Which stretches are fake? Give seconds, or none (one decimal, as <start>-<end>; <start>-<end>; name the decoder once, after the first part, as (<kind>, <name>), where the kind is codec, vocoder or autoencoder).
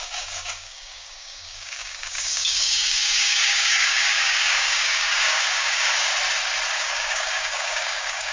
0.0-6.1 (codec, DAC); 6.7-8.3